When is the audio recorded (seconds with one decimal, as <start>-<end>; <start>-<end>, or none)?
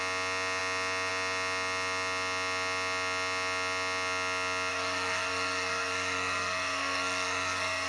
0.0-4.7